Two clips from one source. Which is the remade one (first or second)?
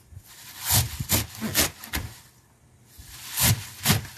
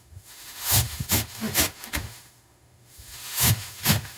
second